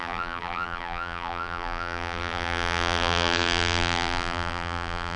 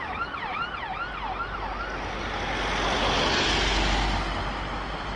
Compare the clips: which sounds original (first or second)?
second